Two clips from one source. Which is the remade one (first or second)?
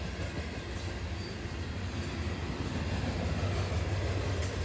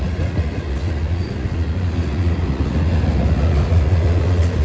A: second